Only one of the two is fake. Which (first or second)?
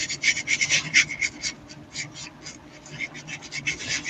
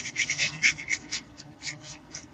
second